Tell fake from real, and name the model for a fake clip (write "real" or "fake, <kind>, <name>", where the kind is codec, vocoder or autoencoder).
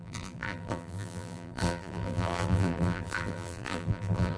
fake, vocoder, BigVGAN v2